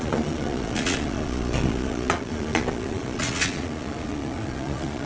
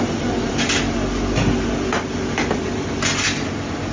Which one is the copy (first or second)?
first